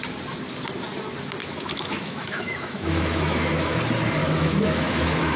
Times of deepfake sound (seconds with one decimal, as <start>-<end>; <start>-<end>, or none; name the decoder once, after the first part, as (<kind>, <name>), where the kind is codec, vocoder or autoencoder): 1.4-3.8 (autoencoder, DAC-VAE); 4.2-5.4